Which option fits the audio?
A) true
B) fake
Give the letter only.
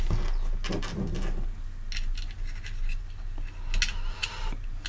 A